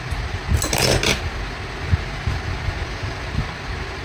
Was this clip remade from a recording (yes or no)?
no